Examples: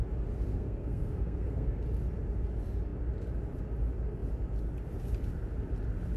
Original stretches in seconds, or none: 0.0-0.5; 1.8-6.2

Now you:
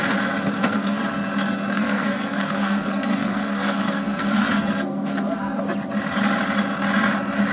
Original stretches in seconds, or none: 0.0-0.6; 1.1-1.7; 5.6-7.5

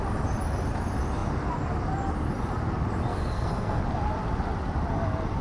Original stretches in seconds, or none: 0.0-3.1; 3.8-5.4